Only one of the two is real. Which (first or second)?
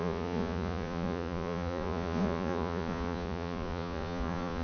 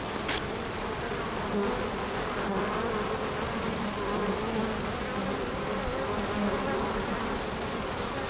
second